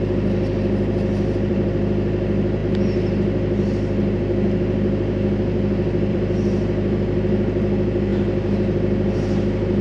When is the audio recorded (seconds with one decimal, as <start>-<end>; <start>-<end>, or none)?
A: 2.6-6.1

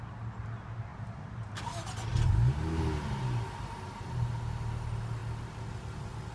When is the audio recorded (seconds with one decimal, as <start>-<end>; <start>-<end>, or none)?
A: 0.0-0.9; 1.6-6.3

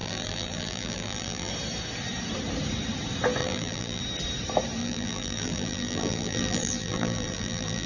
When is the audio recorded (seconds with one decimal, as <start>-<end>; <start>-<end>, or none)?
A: 1.5-3.4; 4.0-4.8